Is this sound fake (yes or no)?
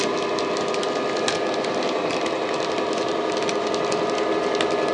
yes